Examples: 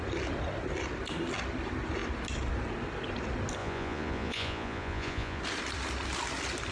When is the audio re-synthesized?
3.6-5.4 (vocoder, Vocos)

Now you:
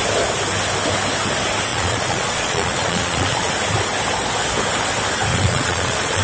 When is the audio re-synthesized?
1.7-3.5 (vocoder, Vocos); 5.3-6.2

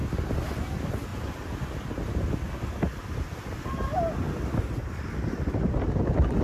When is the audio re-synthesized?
none